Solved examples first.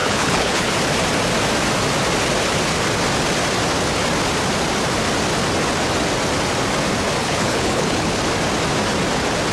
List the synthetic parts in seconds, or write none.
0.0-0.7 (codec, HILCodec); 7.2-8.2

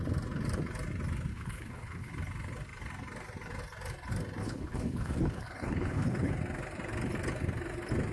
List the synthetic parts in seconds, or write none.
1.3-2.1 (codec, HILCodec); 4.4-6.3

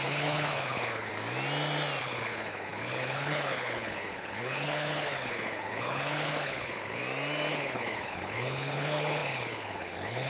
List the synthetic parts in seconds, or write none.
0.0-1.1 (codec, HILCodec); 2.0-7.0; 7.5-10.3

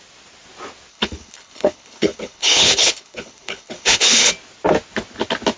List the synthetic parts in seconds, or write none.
0.9-4.3 (codec, HILCodec)

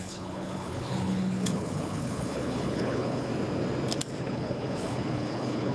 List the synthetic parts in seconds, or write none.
0.0-3.3 (codec, HILCodec); 4.2-5.7